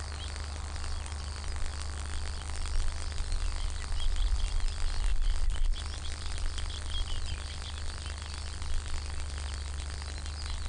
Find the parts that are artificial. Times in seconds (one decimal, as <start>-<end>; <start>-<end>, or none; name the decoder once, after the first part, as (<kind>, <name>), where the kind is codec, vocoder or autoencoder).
none